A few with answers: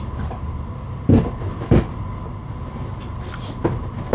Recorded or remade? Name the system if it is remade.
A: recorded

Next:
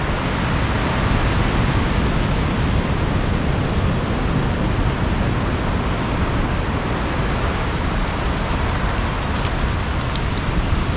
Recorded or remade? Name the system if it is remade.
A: recorded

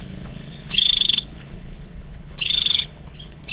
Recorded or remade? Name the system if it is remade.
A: remade, codec, HILCodec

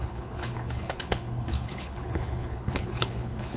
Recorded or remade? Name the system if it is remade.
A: remade, codec, HILCodec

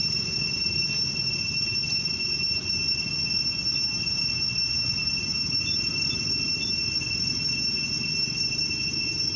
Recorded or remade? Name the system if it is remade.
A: recorded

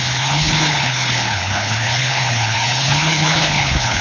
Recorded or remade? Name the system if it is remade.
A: remade, codec, HILCodec